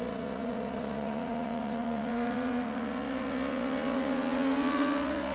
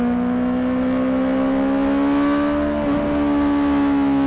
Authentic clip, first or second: second